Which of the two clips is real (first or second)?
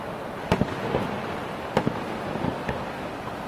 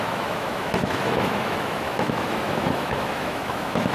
first